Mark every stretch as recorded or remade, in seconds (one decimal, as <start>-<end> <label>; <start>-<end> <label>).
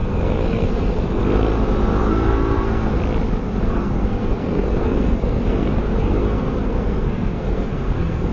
0.0-1.2 remade; 1.2-2.0 recorded; 2.0-3.0 remade; 3.0-3.6 recorded; 3.6-8.3 remade